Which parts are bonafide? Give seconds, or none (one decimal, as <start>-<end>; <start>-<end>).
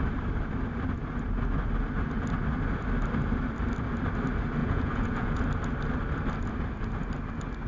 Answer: 0.0-4.6; 5.4-7.7